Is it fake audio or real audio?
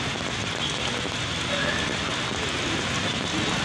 real